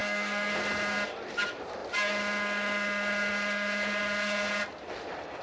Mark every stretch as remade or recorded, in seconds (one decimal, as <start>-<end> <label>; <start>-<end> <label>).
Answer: 0.0-0.5 remade; 0.5-5.4 recorded